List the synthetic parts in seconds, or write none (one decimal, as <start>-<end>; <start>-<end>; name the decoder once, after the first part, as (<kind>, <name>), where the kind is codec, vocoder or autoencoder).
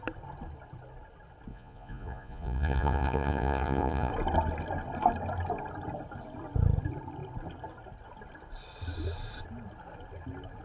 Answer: 1.5-4.1 (vocoder, Vocos)